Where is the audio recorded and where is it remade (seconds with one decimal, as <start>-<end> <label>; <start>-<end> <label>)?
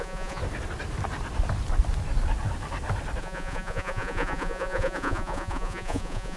0.0-0.4 remade; 0.4-3.2 recorded; 3.2-6.4 remade